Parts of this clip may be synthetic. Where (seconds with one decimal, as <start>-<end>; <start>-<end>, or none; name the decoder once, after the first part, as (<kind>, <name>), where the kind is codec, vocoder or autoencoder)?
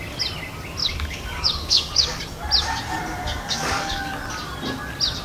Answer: 0.8-2.2 (codec, DAC); 3.2-4.2